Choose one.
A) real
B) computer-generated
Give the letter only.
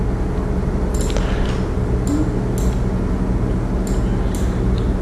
A